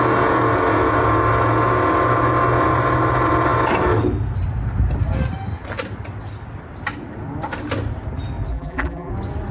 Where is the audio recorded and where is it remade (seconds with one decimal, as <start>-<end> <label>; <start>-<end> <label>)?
0.0-8.5 recorded; 8.5-9.1 remade; 9.1-9.5 recorded